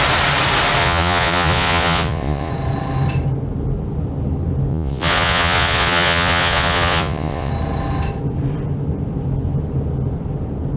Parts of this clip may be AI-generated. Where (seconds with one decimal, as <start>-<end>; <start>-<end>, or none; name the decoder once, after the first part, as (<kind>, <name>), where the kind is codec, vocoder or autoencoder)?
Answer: 0.8-2.5 (vocoder, Vocos); 4.7-7.5